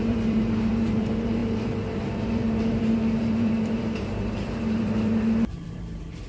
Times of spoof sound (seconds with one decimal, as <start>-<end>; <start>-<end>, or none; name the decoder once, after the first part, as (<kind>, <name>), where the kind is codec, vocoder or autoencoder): 0.0-6.3 (vocoder, BigVGAN v2)